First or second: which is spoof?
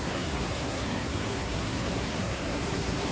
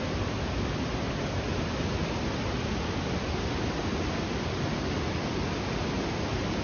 first